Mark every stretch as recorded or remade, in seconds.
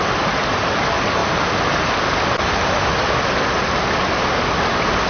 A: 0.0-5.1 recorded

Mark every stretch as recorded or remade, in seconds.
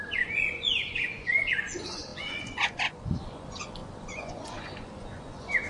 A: 0.0-5.7 remade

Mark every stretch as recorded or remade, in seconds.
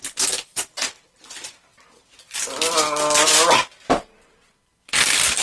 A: 0.0-5.4 recorded